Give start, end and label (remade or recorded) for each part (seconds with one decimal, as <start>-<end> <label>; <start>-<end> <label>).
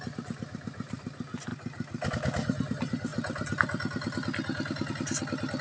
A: 0.0-5.6 recorded